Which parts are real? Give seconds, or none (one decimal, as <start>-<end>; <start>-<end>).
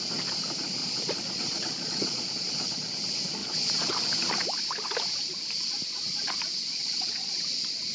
0.0-0.8; 2.9-3.4; 3.9-6.8; 7.3-7.9